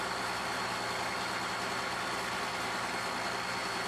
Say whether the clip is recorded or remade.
recorded